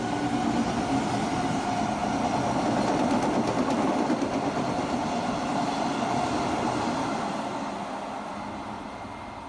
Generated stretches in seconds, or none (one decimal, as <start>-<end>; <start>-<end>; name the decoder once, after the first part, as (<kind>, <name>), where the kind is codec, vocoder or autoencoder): none